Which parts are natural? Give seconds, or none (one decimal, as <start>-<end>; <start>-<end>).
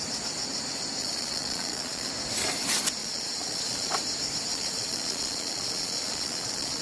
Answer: 0.0-1.0; 2.1-3.0; 3.9-4.5